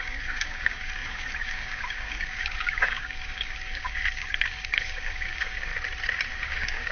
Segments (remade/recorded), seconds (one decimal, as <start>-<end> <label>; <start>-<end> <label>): 0.0-5.7 remade; 5.7-6.3 recorded; 6.3-6.9 remade